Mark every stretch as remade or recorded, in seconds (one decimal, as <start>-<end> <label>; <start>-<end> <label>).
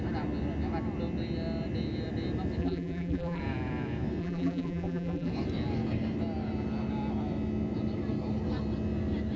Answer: 0.0-2.6 recorded; 2.6-3.4 remade; 3.4-4.2 recorded; 4.2-5.3 remade; 5.3-9.4 recorded